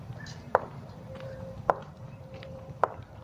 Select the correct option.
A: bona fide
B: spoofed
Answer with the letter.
B